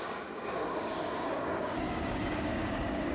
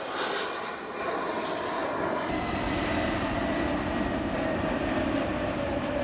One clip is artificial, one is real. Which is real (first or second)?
second